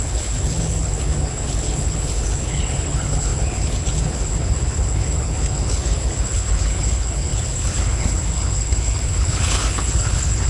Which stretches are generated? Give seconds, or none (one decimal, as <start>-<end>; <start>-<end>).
0.0-10.5